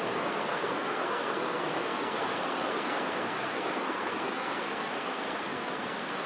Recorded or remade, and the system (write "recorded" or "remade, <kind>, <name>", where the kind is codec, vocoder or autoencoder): remade, codec, SNAC